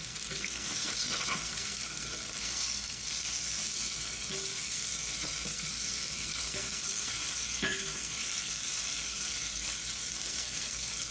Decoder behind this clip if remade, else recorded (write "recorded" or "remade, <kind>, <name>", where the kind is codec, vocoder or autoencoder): remade, codec, SNAC